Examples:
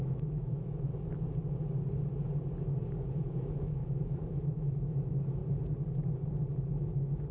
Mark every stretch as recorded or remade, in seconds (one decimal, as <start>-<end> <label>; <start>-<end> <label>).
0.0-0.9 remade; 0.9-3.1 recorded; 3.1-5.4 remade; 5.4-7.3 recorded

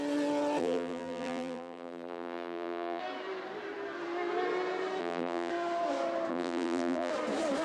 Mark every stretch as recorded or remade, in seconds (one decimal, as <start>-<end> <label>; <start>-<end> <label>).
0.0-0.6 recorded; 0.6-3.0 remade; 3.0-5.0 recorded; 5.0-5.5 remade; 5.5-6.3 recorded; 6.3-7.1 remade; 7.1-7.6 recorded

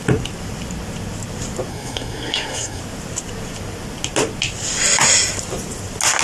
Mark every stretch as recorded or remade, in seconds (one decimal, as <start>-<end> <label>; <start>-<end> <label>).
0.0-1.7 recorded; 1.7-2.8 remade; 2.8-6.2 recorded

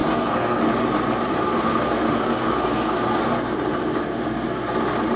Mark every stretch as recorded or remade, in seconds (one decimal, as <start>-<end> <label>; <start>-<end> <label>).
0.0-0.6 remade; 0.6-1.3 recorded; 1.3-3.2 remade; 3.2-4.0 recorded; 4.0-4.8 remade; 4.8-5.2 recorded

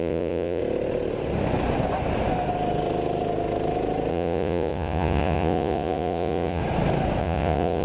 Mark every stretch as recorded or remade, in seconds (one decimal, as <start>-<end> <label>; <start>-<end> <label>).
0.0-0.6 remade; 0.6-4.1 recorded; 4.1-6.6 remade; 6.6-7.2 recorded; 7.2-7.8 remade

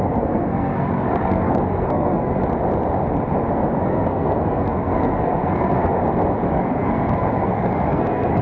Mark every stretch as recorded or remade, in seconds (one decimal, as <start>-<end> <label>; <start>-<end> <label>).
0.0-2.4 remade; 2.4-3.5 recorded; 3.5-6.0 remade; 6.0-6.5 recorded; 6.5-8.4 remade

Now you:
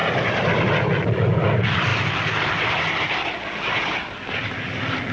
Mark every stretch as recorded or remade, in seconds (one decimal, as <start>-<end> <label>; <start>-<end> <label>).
0.0-0.7 remade; 0.7-5.1 recorded

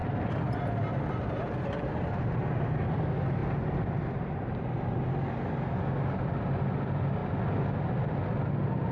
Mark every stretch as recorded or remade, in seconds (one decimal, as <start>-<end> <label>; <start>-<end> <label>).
0.0-8.9 recorded